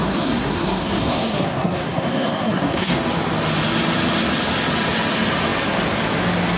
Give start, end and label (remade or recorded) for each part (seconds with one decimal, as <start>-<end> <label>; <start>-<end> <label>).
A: 0.0-2.9 remade; 2.9-6.6 recorded

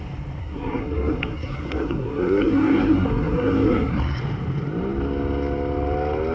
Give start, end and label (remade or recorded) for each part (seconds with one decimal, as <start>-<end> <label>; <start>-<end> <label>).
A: 0.0-0.4 recorded; 0.4-4.2 remade; 4.2-6.3 recorded

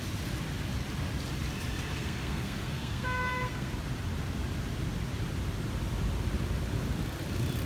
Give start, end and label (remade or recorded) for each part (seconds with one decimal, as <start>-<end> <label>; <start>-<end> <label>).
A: 0.0-2.0 recorded; 2.0-3.7 remade; 3.7-7.7 recorded

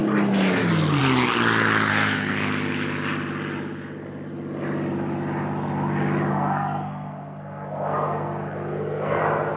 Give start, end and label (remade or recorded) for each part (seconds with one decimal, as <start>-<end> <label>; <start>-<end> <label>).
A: 0.0-1.9 recorded; 1.9-2.5 remade; 2.5-6.3 recorded; 6.3-9.2 remade; 9.2-9.6 recorded

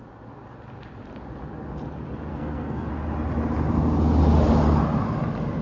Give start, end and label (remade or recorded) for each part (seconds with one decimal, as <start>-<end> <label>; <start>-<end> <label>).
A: 0.0-2.3 recorded; 2.3-2.9 remade; 2.9-5.6 recorded

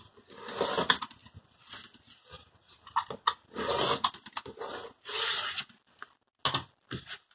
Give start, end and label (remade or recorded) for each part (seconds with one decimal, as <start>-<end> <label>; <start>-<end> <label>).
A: 0.0-7.3 recorded

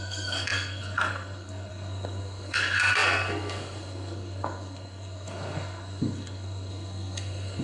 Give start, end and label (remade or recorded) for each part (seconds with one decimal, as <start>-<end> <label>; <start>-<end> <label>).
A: 0.0-7.6 remade